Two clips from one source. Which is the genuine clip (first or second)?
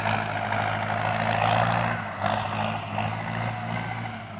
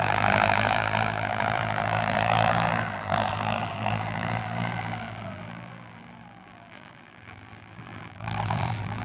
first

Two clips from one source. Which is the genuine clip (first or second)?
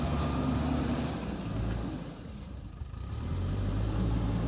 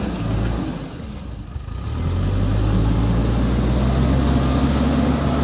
second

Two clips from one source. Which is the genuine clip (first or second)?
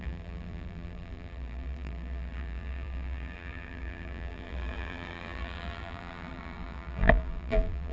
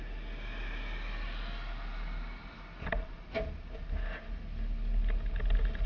second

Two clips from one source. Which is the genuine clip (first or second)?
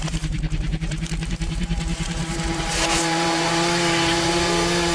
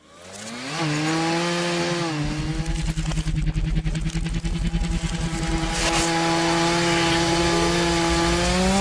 second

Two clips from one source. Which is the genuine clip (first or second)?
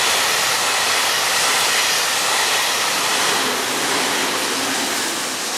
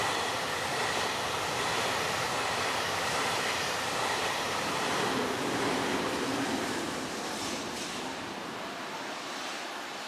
first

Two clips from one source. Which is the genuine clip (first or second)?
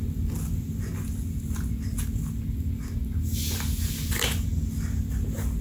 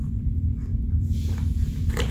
first